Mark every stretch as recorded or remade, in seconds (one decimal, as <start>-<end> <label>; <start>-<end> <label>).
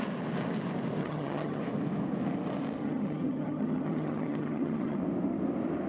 0.0-1.0 recorded; 1.0-1.6 remade; 1.6-2.8 recorded; 2.8-5.0 remade; 5.0-5.9 recorded